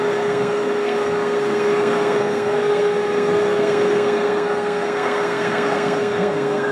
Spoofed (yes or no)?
yes